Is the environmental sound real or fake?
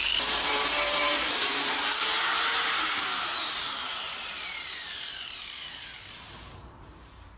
fake